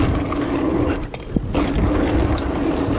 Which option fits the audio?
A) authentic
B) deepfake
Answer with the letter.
A